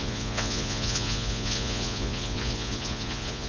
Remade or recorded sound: remade